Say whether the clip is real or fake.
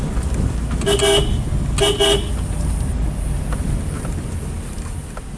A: real